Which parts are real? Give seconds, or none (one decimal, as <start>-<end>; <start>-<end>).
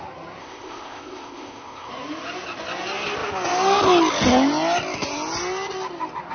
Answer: 0.0-0.4; 1.9-6.3